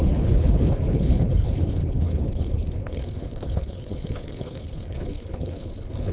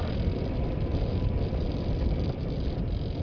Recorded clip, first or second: second